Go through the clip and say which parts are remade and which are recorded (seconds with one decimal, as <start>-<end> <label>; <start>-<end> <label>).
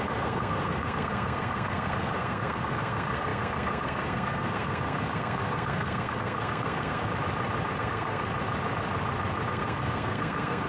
0.0-7.0 remade; 7.0-7.8 recorded; 7.8-8.2 remade; 8.2-9.5 recorded; 9.5-10.7 remade